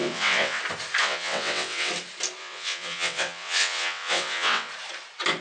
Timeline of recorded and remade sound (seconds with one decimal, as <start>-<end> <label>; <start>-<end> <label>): 0.0-0.6 remade; 0.6-1.0 recorded; 1.0-1.9 remade; 1.9-2.4 recorded; 2.4-4.7 remade; 4.7-5.4 recorded